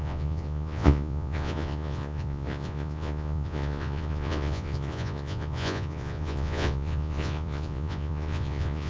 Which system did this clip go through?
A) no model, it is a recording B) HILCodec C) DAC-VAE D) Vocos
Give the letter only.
D